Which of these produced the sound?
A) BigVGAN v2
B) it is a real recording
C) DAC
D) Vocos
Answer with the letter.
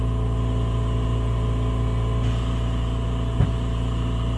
B